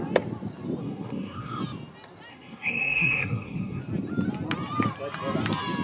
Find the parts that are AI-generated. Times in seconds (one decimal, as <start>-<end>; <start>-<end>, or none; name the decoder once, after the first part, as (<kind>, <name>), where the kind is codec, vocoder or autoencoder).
0.8-1.6 (codec, SNAC); 2.3-3.8